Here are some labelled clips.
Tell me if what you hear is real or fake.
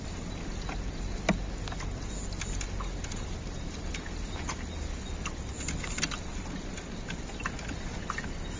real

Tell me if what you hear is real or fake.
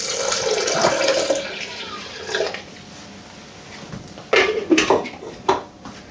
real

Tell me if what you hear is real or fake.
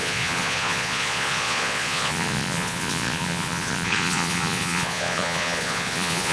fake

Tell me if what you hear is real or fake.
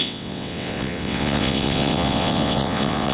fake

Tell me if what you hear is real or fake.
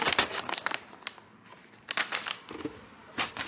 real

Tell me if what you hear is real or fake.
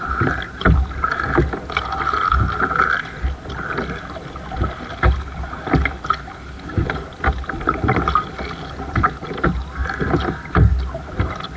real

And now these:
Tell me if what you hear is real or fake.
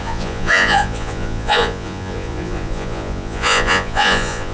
fake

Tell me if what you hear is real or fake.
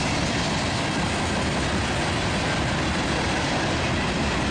real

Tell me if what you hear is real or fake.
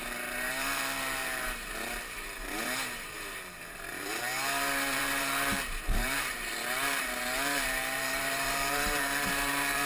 fake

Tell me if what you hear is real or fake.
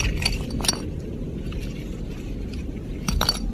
real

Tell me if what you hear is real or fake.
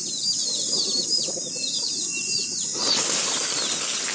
real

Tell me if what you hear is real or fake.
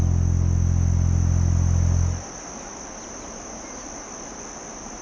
real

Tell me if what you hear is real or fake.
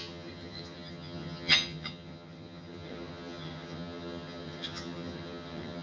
fake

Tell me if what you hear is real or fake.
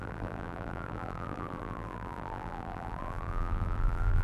fake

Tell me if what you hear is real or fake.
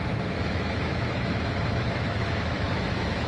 fake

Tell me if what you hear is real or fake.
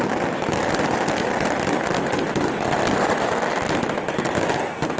real